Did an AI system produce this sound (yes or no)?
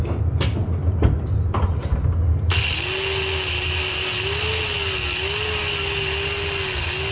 no